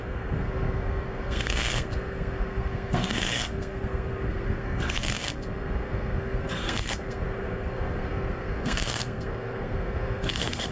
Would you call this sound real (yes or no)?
no